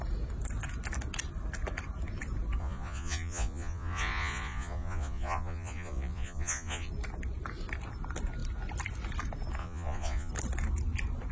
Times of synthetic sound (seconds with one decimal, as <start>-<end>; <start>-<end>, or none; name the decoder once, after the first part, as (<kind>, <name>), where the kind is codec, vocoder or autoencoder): 2.6-6.9 (vocoder, Vocos); 9.6-10.3